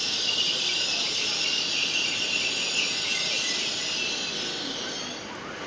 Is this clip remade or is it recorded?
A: remade